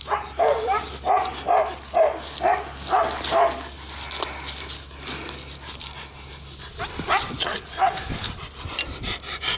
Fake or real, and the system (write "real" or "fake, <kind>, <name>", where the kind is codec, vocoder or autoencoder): real